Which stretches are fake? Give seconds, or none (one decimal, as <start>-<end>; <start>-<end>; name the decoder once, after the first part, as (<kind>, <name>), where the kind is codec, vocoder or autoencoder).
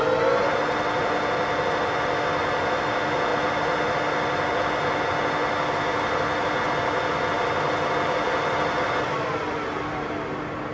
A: none